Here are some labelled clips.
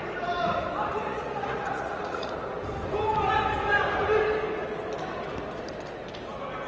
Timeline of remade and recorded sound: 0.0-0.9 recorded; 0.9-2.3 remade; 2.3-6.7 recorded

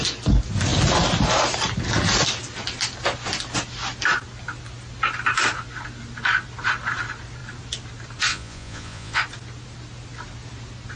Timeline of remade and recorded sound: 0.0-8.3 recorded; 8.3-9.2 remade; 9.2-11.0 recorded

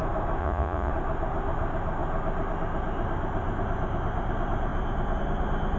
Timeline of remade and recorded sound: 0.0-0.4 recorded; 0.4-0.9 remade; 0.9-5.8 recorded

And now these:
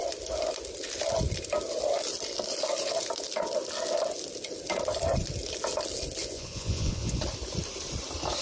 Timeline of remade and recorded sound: 0.0-6.2 recorded; 6.2-7.2 remade; 7.2-8.4 recorded

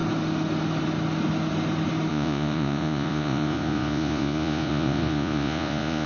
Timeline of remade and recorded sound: 0.0-2.1 recorded; 2.1-6.1 remade